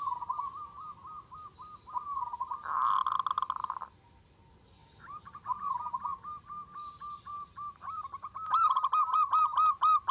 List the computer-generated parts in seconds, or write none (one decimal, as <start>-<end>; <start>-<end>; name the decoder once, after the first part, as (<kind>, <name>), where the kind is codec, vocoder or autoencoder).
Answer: 4.8-5.7 (vocoder, BigVGAN v2); 7.3-9.3

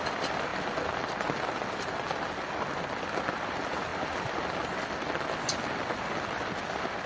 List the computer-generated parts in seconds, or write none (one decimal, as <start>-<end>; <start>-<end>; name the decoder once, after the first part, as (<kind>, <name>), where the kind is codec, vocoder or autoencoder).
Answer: none

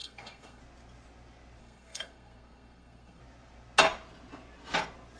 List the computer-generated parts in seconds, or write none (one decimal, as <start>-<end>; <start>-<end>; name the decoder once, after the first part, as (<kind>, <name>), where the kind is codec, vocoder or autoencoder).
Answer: 0.0-0.6 (codec, SNAC); 1.6-3.2

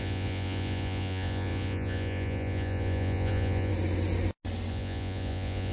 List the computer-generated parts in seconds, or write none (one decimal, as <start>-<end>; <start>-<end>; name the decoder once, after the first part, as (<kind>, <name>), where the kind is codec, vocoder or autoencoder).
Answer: 0.0-3.7 (vocoder, Vocos); 4.7-5.7